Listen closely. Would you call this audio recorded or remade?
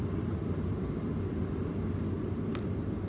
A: recorded